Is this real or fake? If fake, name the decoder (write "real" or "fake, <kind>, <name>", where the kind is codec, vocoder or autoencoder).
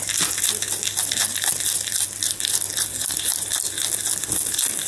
real